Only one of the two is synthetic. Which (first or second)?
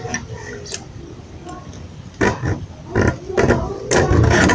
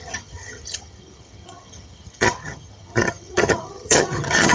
second